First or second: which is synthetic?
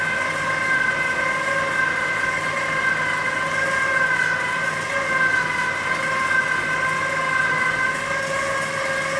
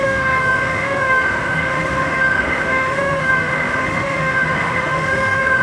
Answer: second